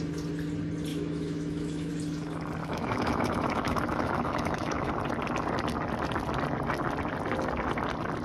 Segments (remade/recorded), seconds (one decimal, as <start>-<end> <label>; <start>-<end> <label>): 0.0-0.9 recorded; 0.9-1.9 remade; 1.9-2.6 recorded; 2.6-4.9 remade; 4.9-8.2 recorded